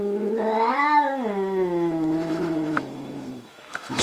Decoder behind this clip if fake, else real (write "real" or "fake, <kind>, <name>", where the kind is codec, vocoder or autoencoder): fake, autoencoder, DAC-VAE